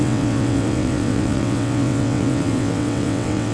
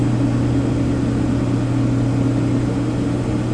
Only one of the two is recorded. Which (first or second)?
second